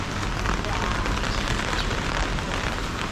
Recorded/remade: recorded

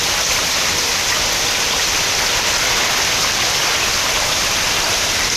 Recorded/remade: recorded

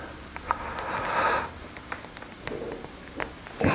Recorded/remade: recorded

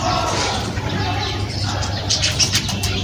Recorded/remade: recorded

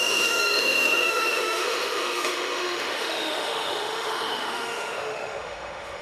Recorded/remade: remade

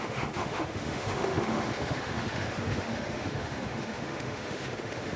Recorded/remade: remade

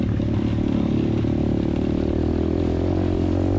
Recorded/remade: recorded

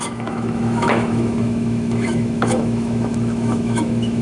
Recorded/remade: remade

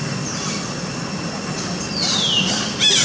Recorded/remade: recorded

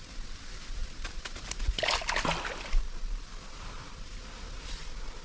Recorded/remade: recorded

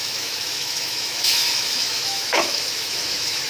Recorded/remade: remade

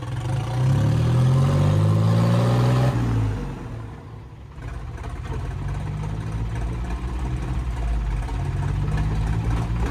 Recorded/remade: recorded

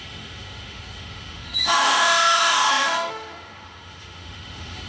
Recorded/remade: remade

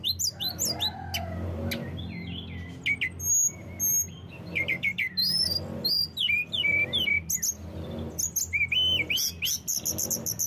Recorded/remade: recorded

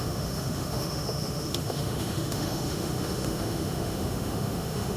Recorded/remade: remade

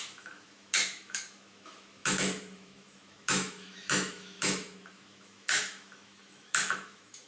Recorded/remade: remade